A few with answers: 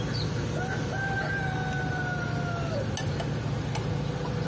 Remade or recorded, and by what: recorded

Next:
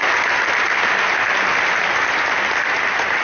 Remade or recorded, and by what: recorded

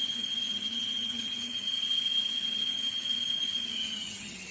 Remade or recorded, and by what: remade, vocoder, HiFi-GAN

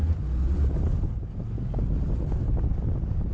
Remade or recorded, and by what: recorded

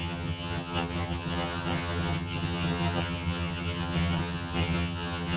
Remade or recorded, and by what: remade, vocoder, HiFi-GAN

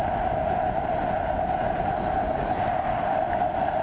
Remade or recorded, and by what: recorded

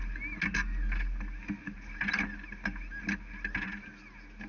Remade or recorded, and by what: recorded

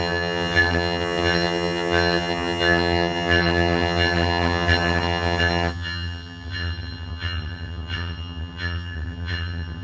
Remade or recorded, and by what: remade, vocoder, HiFi-GAN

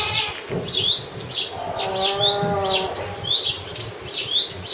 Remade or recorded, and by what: recorded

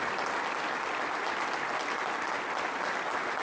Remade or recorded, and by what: recorded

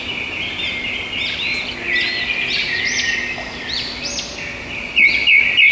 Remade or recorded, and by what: recorded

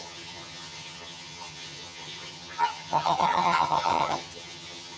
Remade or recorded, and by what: remade, vocoder, HiFi-GAN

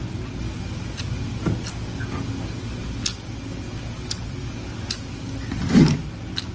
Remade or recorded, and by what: recorded